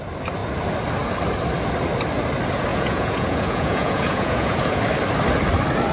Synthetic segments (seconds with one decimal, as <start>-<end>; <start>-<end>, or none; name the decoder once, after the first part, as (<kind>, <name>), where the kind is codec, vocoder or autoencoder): 2.7-4.8 (vocoder, Vocos)